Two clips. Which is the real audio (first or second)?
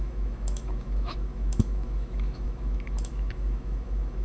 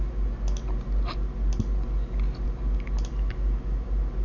second